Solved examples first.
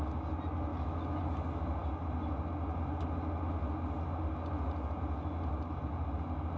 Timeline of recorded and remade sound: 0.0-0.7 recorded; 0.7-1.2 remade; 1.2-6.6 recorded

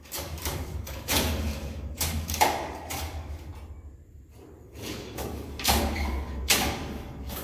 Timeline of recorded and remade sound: 0.0-3.5 remade; 3.5-4.6 recorded; 4.6-7.4 remade

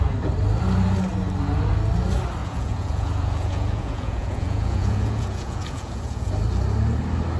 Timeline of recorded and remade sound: 0.0-2.4 recorded; 2.4-6.3 remade; 6.3-7.4 recorded

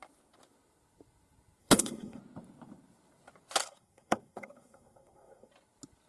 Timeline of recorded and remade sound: 0.0-1.6 recorded; 1.6-2.2 remade; 2.2-3.6 recorded; 3.6-5.5 remade; 5.5-6.1 recorded

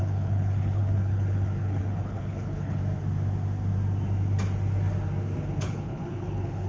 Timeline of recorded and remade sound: 0.0-2.8 remade; 2.8-5.4 recorded; 5.4-6.7 remade

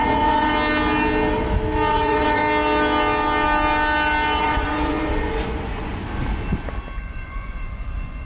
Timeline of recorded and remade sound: 0.0-0.5 remade; 0.5-1.9 recorded; 1.9-2.4 remade; 2.4-4.4 recorded; 4.4-6.0 remade; 6.0-7.0 recorded; 7.0-8.3 remade

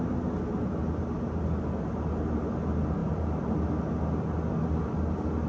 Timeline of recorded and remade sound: 0.0-3.0 recorded; 3.0-3.6 remade; 3.6-5.5 recorded